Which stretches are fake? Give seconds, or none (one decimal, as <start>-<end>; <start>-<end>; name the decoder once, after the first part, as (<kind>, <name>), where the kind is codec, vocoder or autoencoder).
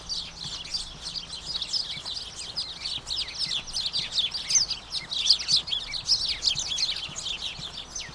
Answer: none